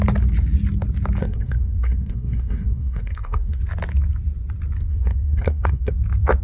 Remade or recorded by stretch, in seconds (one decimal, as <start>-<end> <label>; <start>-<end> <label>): 0.0-1.2 recorded; 1.2-3.6 remade; 3.6-4.8 recorded; 4.8-5.9 remade; 5.9-6.4 recorded